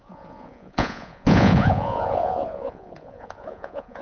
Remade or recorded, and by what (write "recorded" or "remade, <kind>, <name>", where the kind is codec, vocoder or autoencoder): remade, vocoder, Vocos